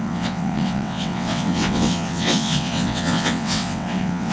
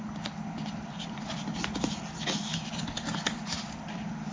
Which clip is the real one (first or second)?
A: second